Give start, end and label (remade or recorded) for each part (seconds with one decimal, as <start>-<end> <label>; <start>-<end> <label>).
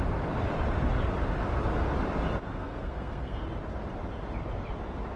0.0-2.5 recorded; 2.5-3.4 remade; 3.4-5.2 recorded